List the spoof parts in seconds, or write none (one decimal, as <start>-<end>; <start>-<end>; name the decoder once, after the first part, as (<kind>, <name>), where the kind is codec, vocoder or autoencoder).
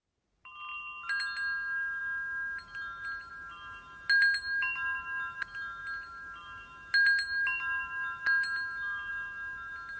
none